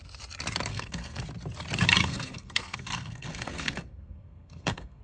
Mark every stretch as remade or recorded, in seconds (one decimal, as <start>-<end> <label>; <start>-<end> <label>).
0.0-0.7 recorded; 0.7-1.2 remade; 1.2-2.0 recorded; 2.0-5.0 remade